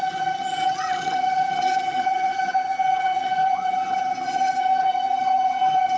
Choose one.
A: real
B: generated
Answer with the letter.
B